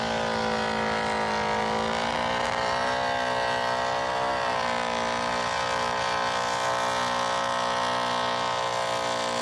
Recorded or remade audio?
recorded